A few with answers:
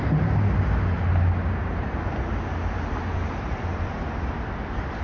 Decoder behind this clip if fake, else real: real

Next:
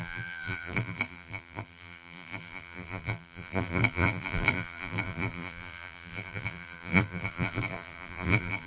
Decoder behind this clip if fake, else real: fake, vocoder, BigVGAN v2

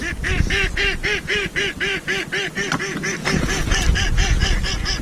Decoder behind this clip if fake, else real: real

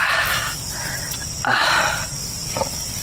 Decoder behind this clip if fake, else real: fake, vocoder, BigVGAN v2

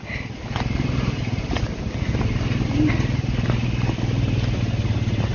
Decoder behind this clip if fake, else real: real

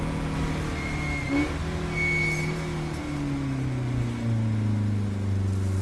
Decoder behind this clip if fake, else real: real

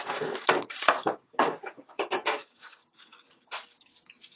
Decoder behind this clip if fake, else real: fake, codec, DAC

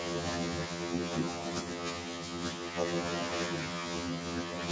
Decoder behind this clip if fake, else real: fake, vocoder, HiFi-GAN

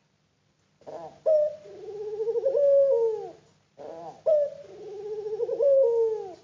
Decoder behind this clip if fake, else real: real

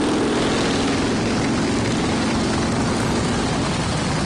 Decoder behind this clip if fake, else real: real